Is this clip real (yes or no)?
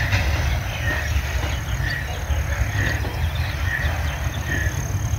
yes